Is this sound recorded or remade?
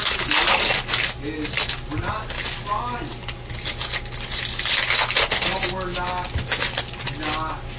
recorded